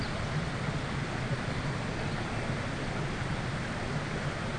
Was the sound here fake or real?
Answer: real